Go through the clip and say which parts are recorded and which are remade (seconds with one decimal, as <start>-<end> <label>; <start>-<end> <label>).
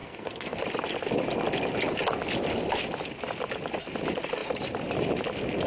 0.0-0.6 remade; 0.6-5.7 recorded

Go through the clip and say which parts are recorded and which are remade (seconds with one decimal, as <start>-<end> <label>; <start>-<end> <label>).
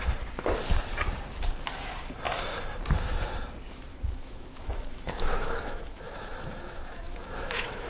0.0-3.9 recorded; 3.9-7.9 remade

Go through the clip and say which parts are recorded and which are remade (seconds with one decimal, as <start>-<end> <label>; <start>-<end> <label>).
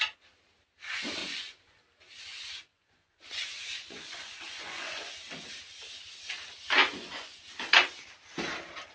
0.0-1.2 recorded; 1.2-1.8 remade; 1.8-2.7 recorded; 2.7-5.1 remade; 5.1-6.8 recorded; 6.8-7.5 remade; 7.5-8.9 recorded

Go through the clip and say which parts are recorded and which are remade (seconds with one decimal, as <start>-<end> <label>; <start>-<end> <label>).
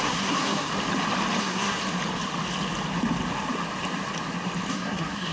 0.0-0.7 remade; 0.7-1.4 recorded; 1.4-1.8 remade; 1.8-4.7 recorded; 4.7-5.3 remade